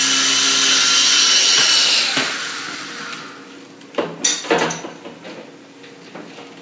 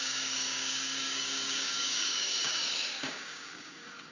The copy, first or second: second